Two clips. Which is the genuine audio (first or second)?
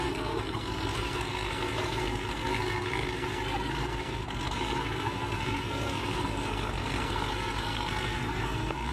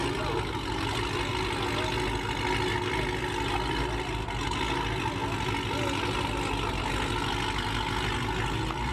second